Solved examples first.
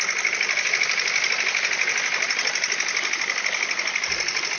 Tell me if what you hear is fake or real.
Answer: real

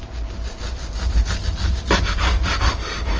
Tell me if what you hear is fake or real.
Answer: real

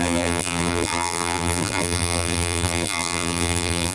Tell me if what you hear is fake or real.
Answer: fake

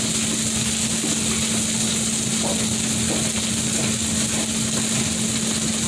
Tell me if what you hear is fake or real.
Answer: real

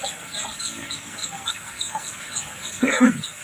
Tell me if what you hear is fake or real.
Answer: fake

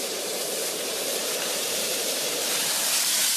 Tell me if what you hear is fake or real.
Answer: fake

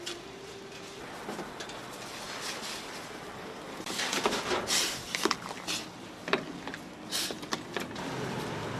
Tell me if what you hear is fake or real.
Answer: real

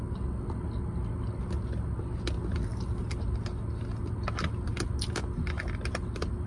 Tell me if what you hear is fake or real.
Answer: real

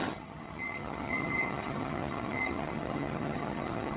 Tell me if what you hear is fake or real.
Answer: fake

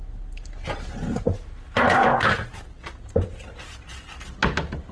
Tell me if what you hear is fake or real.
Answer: real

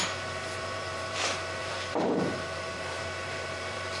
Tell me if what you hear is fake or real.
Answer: fake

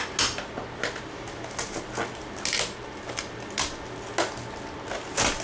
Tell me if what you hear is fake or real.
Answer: real